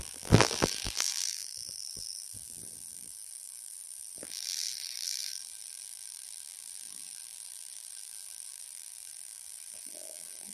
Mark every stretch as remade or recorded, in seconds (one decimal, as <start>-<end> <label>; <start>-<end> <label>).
0.0-10.5 remade